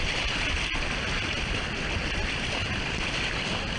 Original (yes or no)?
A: yes